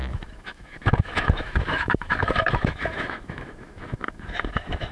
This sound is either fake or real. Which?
fake